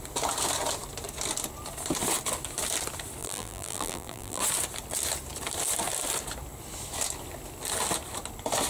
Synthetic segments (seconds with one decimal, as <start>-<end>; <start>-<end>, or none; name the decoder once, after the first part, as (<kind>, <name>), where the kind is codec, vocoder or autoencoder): 3.2-4.4 (vocoder, BigVGAN v2)